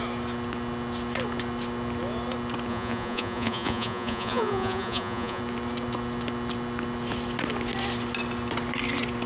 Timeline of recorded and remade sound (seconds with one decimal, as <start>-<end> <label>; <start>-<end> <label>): 0.0-2.7 recorded; 2.7-5.4 remade; 5.4-9.3 recorded